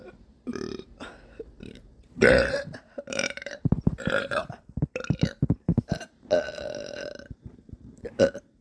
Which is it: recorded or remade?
remade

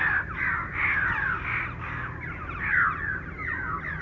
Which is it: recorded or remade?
recorded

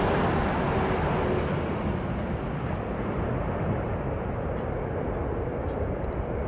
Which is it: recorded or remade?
recorded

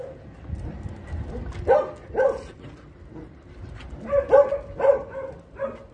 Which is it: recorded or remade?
recorded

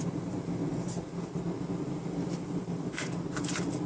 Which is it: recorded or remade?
remade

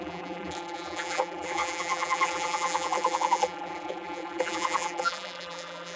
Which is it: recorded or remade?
remade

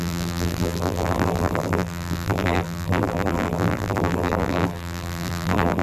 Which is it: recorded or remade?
remade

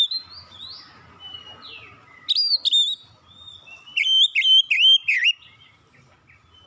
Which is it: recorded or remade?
recorded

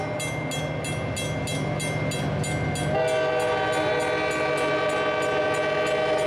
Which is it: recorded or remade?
recorded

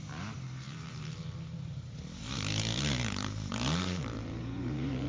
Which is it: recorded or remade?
remade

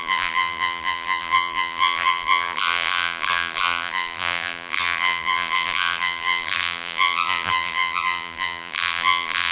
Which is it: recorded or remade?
remade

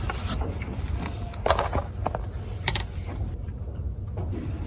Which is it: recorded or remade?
remade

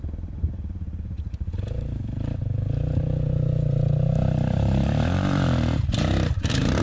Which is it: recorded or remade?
remade